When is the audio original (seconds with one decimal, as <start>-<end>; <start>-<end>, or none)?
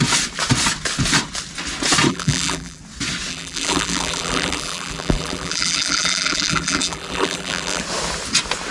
0.0-2.1; 2.8-3.3; 7.8-8.7